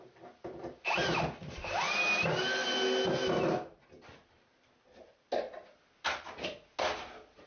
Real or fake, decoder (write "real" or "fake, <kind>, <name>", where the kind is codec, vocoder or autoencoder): real